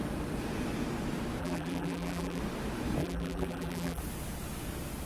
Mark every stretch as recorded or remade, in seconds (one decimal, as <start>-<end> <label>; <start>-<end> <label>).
0.0-1.4 recorded; 1.4-2.4 remade; 2.4-3.0 recorded; 3.0-4.0 remade; 4.0-5.1 recorded